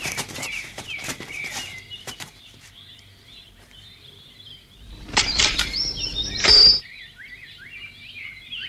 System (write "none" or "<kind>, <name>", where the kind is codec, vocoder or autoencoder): vocoder, BigVGAN v2